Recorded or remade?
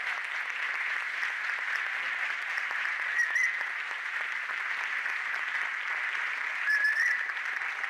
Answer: recorded